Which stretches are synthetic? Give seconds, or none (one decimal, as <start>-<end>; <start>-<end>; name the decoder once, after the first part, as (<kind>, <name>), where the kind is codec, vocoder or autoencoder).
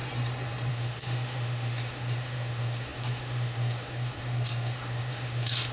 0.7-5.7 (autoencoder, DAC-VAE)